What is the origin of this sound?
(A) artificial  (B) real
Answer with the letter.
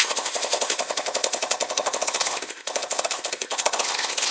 A